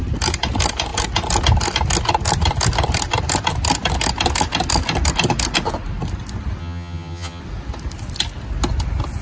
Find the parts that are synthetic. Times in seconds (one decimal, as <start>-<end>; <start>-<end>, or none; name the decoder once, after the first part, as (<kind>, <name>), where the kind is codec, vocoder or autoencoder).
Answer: 6.6-7.4 (vocoder, HiFi-GAN)